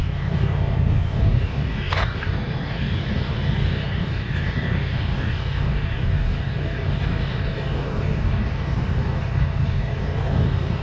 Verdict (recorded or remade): remade